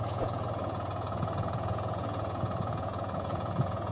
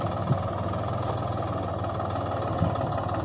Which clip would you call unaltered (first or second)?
second